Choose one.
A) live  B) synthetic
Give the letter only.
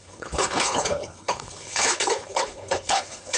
B